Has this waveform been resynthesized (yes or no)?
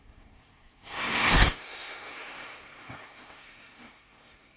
yes